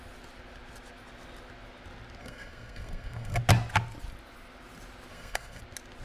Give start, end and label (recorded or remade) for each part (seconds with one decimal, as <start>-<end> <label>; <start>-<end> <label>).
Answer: 0.0-2.2 recorded; 2.2-3.4 remade; 3.4-5.1 recorded; 5.1-5.6 remade; 5.6-6.0 recorded